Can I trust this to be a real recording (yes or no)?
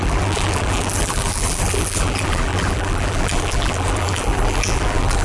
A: no